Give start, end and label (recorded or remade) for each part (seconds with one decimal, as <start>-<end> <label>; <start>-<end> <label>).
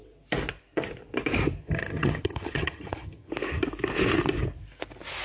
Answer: 0.0-1.6 recorded; 1.6-3.3 remade; 3.3-5.2 recorded